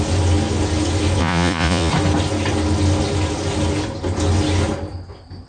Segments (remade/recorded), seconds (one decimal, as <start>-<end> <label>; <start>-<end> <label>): 0.0-1.2 recorded; 1.2-1.9 remade; 1.9-5.5 recorded